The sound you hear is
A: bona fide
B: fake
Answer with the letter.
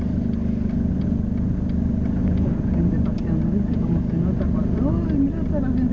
A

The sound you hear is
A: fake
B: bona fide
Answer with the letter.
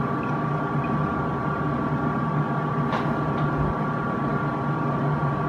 B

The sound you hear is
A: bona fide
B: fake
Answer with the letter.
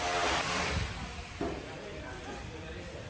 B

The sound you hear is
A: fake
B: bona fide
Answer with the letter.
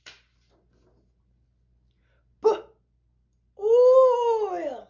B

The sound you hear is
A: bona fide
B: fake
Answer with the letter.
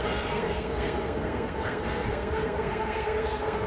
B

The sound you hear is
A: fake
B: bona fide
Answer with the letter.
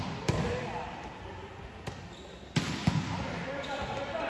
A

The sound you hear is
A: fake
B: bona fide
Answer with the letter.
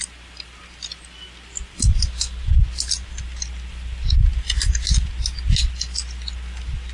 B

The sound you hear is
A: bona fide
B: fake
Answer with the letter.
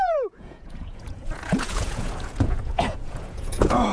B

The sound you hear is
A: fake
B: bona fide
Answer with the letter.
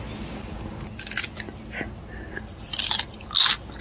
B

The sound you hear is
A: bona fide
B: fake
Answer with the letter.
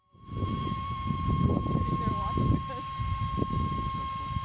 A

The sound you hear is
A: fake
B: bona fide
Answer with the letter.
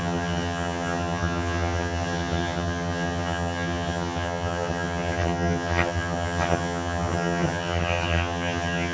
A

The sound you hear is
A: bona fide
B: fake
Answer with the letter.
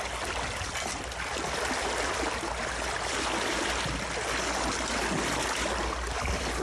A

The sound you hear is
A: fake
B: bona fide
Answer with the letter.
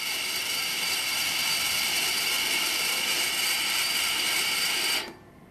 A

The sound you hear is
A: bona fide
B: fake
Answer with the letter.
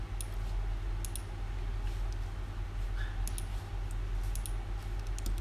A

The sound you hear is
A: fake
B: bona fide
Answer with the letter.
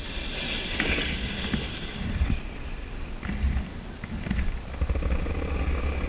B